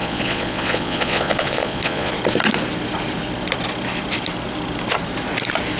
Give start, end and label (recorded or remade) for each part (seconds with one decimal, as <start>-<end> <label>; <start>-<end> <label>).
0.0-2.1 remade; 2.1-5.8 recorded